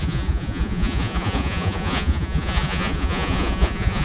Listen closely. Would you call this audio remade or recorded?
remade